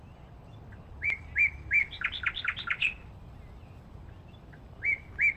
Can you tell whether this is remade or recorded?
remade